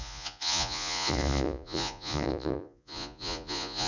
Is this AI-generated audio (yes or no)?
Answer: yes